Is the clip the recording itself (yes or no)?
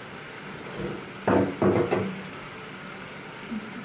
yes